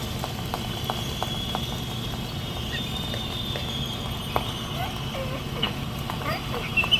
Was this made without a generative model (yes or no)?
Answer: yes